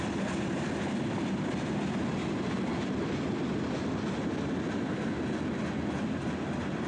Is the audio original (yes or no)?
yes